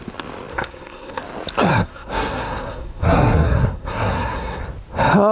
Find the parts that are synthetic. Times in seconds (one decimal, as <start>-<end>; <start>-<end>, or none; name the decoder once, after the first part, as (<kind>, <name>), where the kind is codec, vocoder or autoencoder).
0.5-1.2 (codec, SNAC); 1.7-4.6